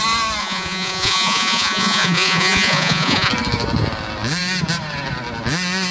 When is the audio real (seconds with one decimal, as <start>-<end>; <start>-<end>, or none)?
0.0-0.4; 3.3-5.9